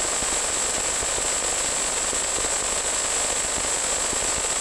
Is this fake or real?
real